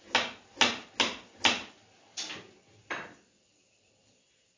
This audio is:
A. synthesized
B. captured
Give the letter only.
B